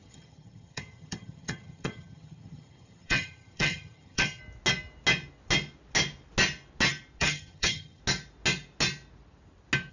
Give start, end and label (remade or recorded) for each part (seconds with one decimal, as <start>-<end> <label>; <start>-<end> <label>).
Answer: 0.0-4.4 remade; 4.4-7.2 recorded; 7.2-8.0 remade; 8.0-9.9 recorded